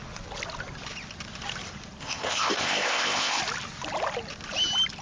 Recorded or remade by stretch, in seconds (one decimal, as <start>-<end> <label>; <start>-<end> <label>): 0.0-2.0 recorded; 2.0-3.4 remade; 3.4-5.0 recorded